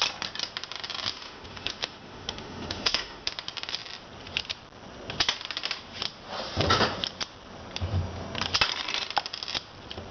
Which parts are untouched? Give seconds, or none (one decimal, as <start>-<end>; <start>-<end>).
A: 0.0-1.1; 3.3-10.1